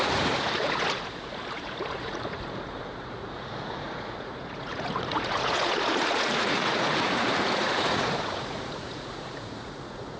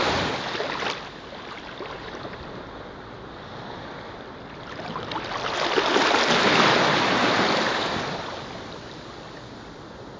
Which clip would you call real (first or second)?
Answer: second